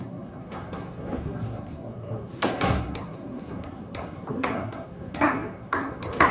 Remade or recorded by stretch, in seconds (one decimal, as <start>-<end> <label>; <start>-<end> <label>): 0.0-6.3 remade